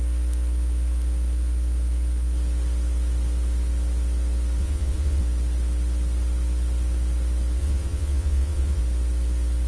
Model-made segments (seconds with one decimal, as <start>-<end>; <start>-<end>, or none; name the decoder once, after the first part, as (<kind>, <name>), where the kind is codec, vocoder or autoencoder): 4.6-5.2 (vocoder, Vocos); 7.6-8.8